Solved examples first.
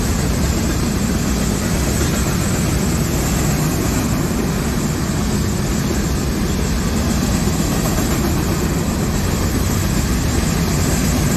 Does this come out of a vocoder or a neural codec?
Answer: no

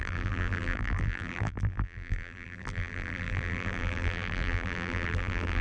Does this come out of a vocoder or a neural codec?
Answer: yes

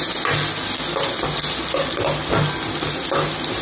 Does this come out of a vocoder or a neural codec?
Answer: no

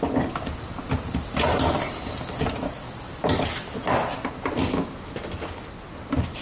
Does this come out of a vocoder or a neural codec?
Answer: no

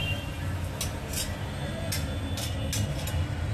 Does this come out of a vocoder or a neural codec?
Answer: no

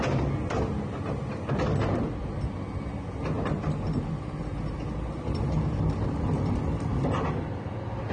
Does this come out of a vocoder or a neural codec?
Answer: no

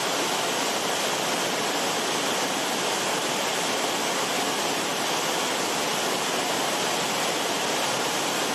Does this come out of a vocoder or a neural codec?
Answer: no